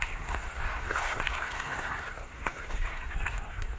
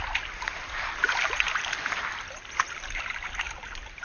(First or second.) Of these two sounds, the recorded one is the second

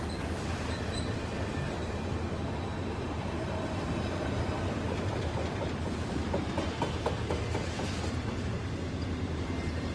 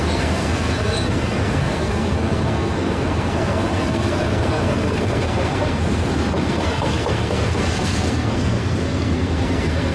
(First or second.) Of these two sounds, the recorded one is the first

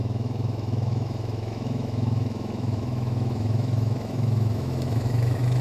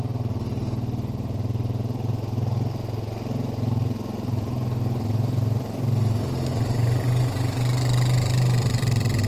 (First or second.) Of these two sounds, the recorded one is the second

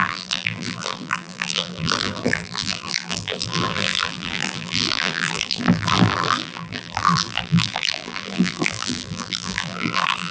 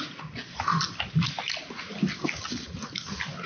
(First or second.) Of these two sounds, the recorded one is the second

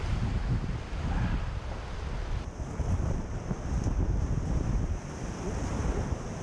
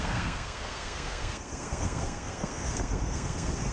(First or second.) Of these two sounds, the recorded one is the first